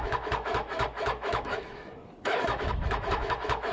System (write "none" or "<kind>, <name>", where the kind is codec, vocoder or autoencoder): autoencoder, DAC-VAE